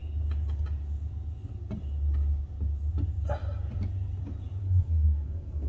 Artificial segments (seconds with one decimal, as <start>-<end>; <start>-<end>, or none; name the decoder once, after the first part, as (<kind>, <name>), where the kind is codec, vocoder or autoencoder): 4.6-5.7 (codec, SNAC)